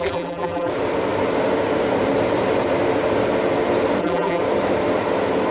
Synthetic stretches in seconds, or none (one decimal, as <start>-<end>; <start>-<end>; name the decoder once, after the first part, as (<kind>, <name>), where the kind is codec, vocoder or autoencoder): 0.0-0.7 (vocoder, BigVGAN v2); 4.0-4.4